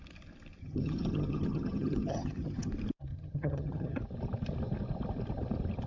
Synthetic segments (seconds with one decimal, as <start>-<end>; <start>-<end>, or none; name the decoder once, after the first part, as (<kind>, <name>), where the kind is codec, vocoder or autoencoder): 0.6-2.7 (vocoder, HiFi-GAN); 3.1-4.0